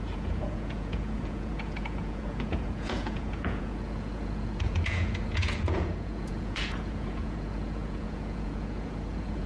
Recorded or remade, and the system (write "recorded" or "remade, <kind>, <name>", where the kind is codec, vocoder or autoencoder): remade, vocoder, Vocos